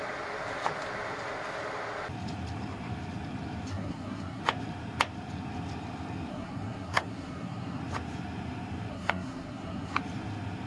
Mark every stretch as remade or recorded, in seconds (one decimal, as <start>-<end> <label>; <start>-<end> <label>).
0.0-3.7 recorded; 3.7-4.4 remade; 4.4-6.3 recorded; 6.3-7.8 remade; 7.8-8.9 recorded; 8.9-10.0 remade; 10.0-10.7 recorded